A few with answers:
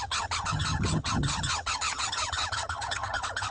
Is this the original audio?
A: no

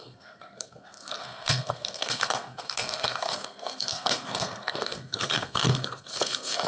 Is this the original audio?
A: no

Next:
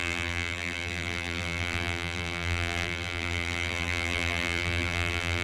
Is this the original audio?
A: no